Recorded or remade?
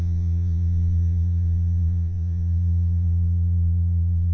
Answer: remade